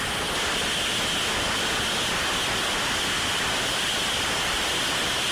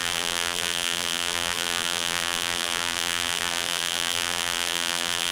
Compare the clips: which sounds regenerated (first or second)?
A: second